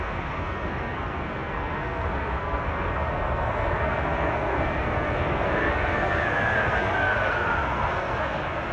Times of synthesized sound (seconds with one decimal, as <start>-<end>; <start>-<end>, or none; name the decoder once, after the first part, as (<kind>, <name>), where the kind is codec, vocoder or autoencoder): 0.0-8.7 (codec, SNAC)